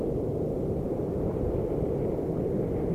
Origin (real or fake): real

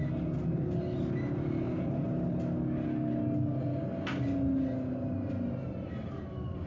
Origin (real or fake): real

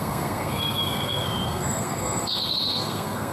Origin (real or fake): fake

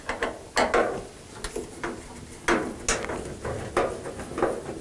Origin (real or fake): real